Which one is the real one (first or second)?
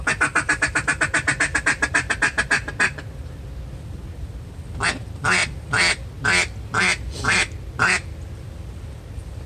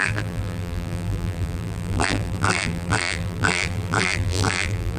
first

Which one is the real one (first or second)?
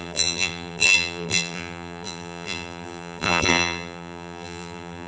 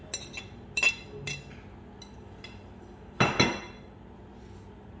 second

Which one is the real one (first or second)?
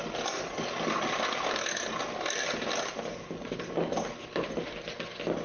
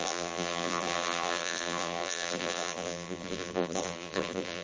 first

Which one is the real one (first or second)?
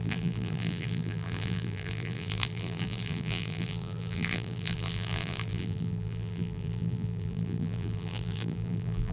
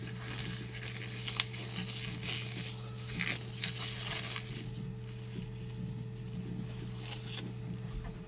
second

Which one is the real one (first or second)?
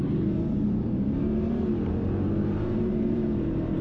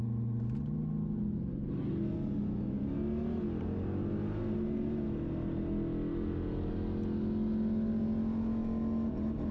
second